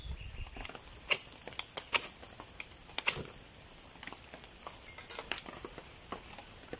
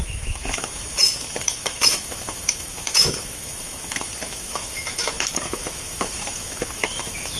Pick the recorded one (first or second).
first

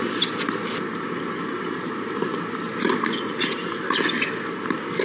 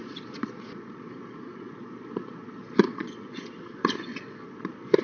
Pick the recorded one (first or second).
first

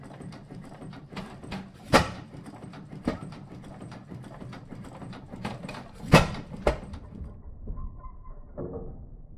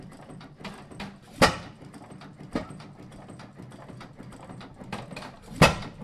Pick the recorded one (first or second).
second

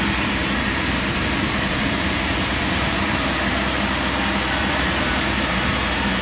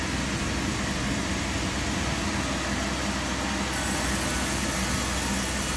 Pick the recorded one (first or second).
second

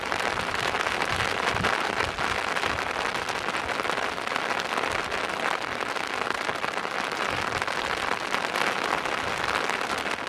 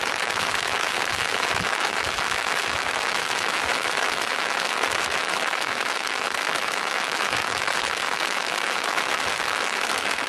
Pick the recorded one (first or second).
first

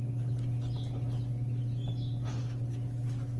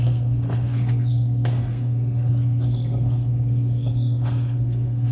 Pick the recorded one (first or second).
first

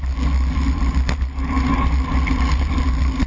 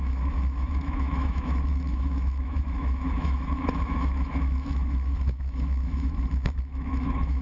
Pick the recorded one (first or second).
first